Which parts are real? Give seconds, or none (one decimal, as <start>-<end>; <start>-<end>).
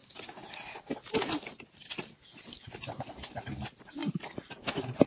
0.0-5.1